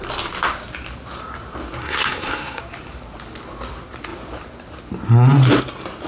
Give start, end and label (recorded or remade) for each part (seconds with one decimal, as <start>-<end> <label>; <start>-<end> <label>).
0.0-1.8 recorded; 1.8-2.6 remade; 2.6-6.1 recorded

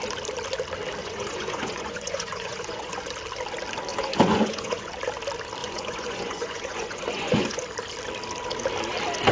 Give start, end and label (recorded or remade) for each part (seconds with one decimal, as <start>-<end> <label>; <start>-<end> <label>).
0.0-1.0 recorded; 1.0-3.1 remade; 3.1-3.9 recorded; 3.9-4.9 remade; 4.9-5.6 recorded; 5.6-7.6 remade; 7.6-9.3 recorded

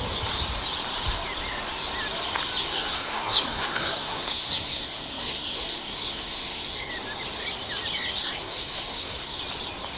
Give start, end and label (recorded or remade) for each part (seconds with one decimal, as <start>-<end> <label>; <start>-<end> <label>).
0.0-2.6 recorded; 2.6-6.9 remade; 6.9-8.2 recorded; 8.2-9.4 remade; 9.4-10.0 recorded

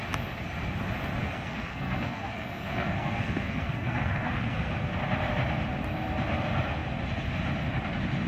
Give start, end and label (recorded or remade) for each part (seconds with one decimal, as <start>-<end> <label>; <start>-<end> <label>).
0.0-1.2 recorded; 1.2-4.8 remade; 4.8-8.3 recorded